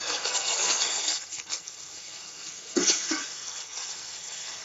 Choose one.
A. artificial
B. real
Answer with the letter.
A